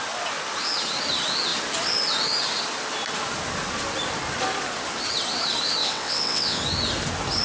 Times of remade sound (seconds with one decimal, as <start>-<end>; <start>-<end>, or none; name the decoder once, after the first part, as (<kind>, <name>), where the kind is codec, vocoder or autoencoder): 5.8-6.6 (vocoder, WaveNeXt)